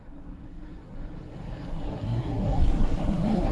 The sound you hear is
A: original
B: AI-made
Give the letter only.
B